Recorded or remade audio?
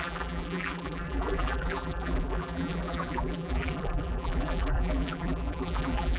remade